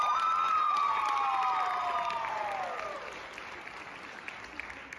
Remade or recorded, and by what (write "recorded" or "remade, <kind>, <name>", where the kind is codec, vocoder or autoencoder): recorded